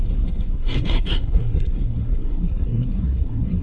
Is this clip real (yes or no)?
no